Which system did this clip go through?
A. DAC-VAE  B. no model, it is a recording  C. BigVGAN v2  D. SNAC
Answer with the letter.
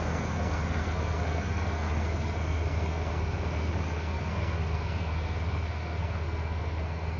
D